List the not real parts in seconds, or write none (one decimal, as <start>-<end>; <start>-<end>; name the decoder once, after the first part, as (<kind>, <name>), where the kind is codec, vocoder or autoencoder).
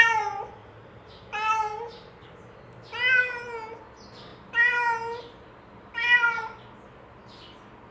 0.6-2.3 (vocoder, BigVGAN v2)